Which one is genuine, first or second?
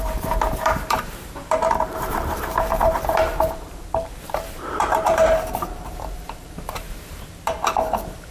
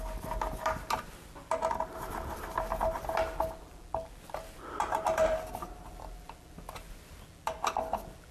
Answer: second